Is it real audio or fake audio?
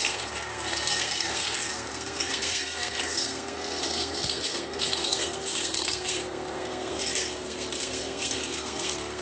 fake